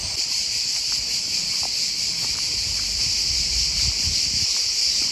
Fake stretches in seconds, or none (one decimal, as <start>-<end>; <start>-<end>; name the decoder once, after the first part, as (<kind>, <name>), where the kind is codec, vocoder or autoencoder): none